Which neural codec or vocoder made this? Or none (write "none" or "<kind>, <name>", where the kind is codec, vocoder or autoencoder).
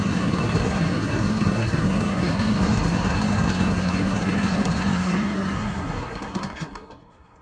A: codec, SNAC